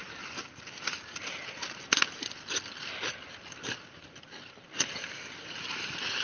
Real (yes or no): yes